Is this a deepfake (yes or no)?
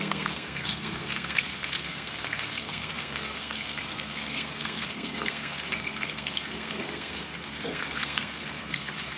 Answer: yes